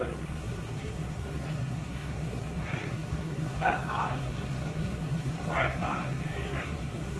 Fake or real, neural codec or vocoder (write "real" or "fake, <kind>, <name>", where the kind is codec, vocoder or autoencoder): fake, codec, SNAC